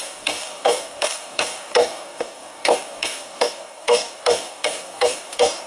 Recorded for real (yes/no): no